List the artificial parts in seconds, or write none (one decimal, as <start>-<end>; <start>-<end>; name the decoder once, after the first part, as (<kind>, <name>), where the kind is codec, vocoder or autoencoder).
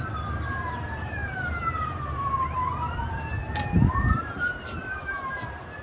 0.0-5.8 (vocoder, BigVGAN v2)